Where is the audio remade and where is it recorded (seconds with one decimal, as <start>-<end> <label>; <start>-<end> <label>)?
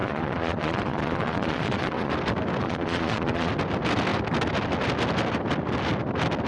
0.0-2.1 remade; 2.1-2.6 recorded; 2.6-3.5 remade; 3.5-6.5 recorded